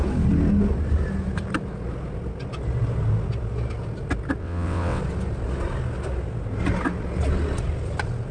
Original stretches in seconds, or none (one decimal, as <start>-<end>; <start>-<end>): 0.0-4.4; 5.0-8.3